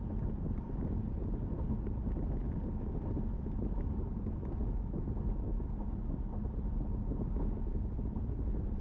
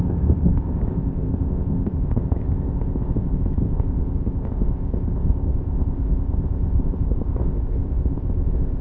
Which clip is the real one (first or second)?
first